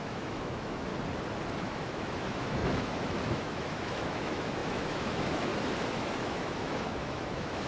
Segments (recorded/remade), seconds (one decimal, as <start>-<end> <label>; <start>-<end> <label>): 0.0-0.9 remade; 0.9-1.6 recorded; 1.6-5.5 remade; 5.5-6.0 recorded; 6.0-7.7 remade